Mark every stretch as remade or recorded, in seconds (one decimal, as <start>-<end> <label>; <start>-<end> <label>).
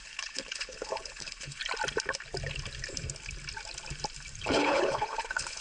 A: 0.0-1.6 remade; 1.6-4.4 recorded; 4.4-5.6 remade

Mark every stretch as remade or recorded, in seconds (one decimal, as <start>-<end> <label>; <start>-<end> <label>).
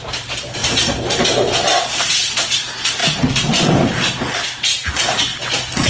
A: 0.0-0.6 recorded; 0.6-2.1 remade; 2.1-3.0 recorded; 3.0-3.9 remade; 3.9-5.9 recorded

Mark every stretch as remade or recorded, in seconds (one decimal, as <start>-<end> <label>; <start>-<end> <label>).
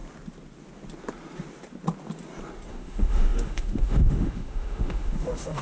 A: 0.0-2.7 recorded; 2.7-5.6 remade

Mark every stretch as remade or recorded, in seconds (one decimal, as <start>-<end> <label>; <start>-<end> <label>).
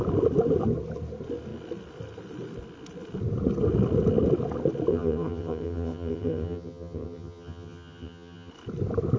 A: 0.0-4.9 recorded; 4.9-8.5 remade; 8.5-9.2 recorded